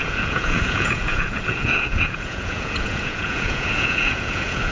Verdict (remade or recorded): remade